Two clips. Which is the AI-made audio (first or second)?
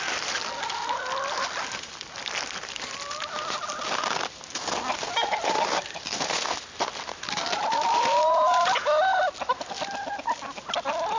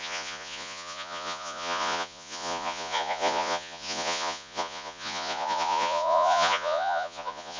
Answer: second